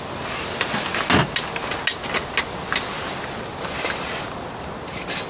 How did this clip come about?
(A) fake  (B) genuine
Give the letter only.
B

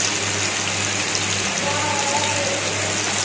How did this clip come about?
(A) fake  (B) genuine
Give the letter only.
B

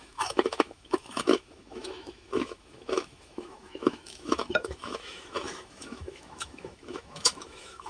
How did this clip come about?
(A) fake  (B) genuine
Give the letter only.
A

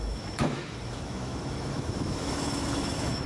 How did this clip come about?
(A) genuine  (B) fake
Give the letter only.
B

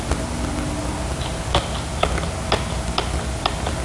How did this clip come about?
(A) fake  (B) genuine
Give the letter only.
B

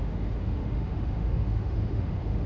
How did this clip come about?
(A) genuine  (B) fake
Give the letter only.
B